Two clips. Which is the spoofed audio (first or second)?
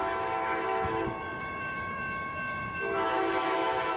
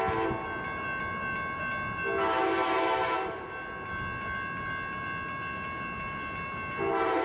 first